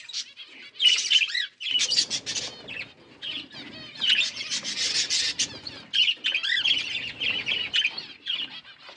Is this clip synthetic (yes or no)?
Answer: no